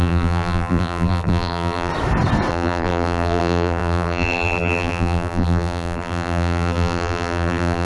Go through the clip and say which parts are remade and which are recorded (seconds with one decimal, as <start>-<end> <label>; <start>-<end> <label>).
0.0-1.9 remade; 1.9-2.5 recorded; 2.5-7.8 remade